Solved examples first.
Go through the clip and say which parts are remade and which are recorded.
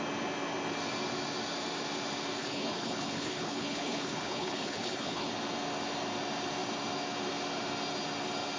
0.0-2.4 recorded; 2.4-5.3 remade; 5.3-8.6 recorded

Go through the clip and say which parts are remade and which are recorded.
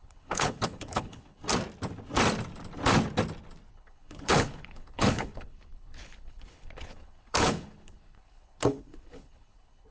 0.0-1.4 remade; 1.4-3.7 recorded; 3.7-9.9 remade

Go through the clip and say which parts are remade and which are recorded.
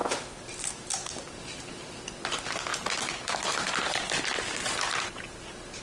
0.0-5.8 recorded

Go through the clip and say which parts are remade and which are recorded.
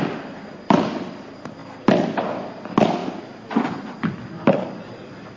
0.0-5.4 recorded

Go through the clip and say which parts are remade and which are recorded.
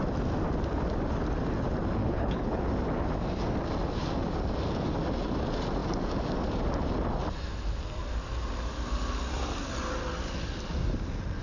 0.0-2.0 recorded; 2.0-2.6 remade; 2.6-11.4 recorded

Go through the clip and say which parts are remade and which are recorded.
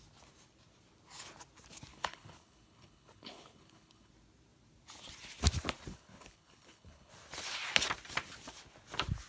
0.0-1.9 recorded; 1.9-4.1 remade; 4.1-5.9 recorded; 5.9-7.1 remade; 7.1-9.3 recorded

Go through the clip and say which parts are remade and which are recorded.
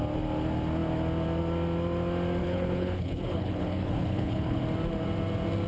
0.0-2.4 recorded; 2.4-4.6 remade; 4.6-5.7 recorded